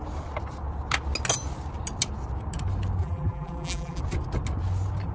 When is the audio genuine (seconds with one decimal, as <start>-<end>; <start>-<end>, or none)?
0.0-3.0; 4.0-5.1